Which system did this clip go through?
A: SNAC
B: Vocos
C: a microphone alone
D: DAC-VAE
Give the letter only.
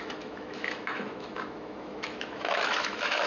D